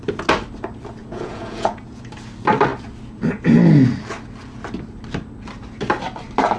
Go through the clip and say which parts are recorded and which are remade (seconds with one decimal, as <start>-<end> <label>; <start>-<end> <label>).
0.0-1.0 recorded; 1.0-2.0 remade; 2.0-6.6 recorded